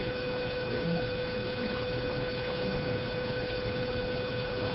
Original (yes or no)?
no